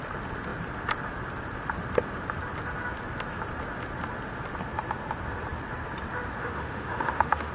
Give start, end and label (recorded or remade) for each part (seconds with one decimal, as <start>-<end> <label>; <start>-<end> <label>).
0.0-6.4 recorded; 6.4-7.5 remade